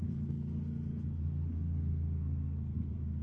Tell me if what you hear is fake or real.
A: fake